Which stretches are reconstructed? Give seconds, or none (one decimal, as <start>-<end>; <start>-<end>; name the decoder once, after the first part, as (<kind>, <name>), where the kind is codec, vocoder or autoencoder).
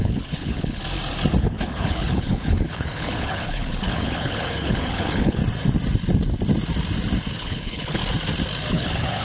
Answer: 0.0-0.8 (codec, HILCodec); 1.4-5.4; 7.3-8.0; 8.7-9.2